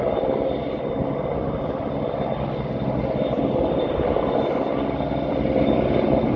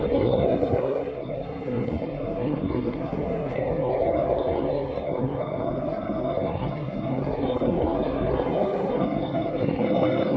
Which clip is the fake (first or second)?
second